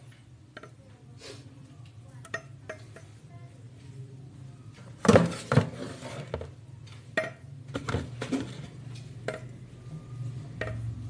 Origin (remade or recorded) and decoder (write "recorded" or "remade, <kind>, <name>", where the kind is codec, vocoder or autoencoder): recorded